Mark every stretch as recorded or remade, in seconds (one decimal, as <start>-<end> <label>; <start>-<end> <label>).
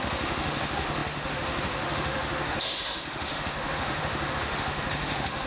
0.0-5.5 remade